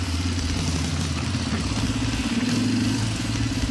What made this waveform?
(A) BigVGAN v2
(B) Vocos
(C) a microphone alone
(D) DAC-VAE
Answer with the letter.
C